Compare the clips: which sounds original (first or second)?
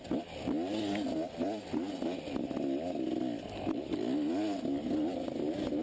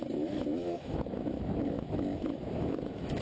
first